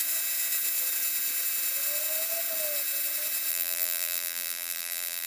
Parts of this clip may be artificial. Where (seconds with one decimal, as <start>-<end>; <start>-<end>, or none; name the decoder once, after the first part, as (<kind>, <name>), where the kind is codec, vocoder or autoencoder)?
3.5-5.3 (vocoder, BigVGAN v2)

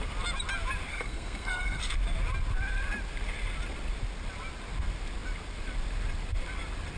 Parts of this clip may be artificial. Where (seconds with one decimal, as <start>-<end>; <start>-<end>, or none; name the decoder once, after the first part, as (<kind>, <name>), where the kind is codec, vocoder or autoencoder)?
0.9-1.8 (codec, SNAC)

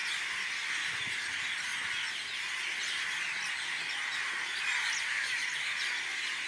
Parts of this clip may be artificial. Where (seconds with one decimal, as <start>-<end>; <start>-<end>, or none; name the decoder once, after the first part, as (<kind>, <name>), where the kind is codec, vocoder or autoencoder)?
none

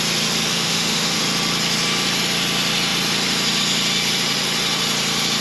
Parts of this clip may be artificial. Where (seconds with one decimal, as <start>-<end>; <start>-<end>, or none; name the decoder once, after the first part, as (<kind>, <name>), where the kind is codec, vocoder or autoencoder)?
0.5-1.2 (autoencoder, DAC-VAE)

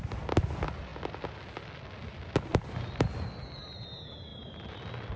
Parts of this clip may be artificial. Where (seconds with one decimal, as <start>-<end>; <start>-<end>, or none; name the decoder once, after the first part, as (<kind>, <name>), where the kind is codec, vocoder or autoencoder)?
2.5-3.3 (vocoder, BigVGAN v2); 4.3-5.2

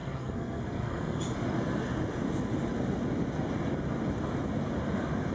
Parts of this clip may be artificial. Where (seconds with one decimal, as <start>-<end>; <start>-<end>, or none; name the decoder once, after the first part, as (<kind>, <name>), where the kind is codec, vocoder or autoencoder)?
0.0-1.2 (codec, SNAC)

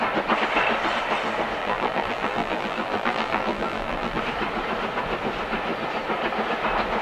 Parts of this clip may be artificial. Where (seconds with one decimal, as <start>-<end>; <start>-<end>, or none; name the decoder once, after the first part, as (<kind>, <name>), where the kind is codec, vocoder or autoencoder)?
1.6-4.2 (vocoder, BigVGAN v2)

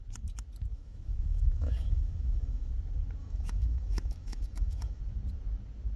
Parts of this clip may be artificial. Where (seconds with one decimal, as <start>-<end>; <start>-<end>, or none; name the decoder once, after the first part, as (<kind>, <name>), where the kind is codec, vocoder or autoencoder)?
0.7-2.7 (autoencoder, DAC-VAE); 3.2-5.0